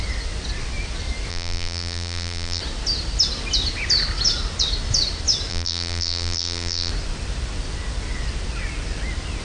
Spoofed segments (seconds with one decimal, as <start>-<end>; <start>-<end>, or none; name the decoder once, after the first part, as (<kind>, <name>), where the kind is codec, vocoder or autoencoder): 1.3-2.6 (vocoder, BigVGAN v2); 5.5-6.9